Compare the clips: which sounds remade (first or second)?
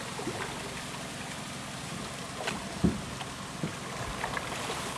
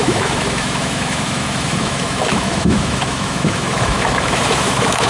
second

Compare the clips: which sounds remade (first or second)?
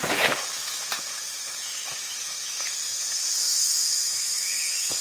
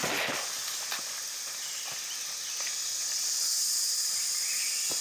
first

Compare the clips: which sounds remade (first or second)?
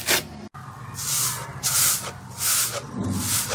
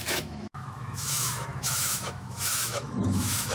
second